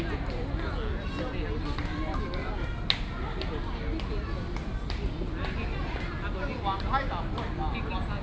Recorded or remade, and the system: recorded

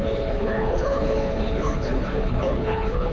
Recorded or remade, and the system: remade, codec, HILCodec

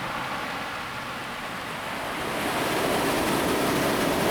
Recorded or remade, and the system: recorded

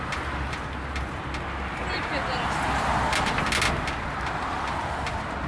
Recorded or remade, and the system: recorded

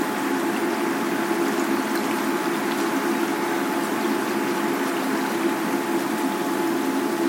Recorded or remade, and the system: recorded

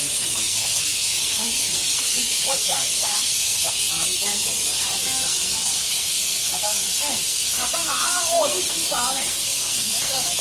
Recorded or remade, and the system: remade, codec, SNAC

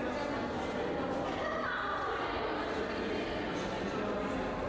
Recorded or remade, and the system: recorded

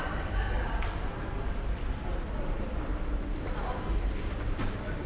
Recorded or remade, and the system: remade, vocoder, BigVGAN v2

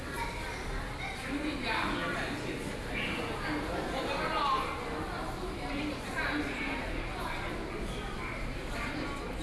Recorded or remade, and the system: recorded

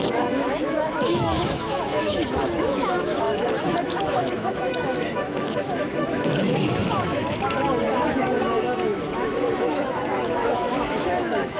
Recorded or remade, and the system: remade, autoencoder, DAC-VAE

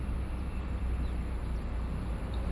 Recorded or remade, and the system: recorded